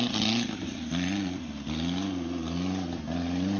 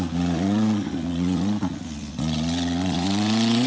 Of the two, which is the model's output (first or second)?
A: second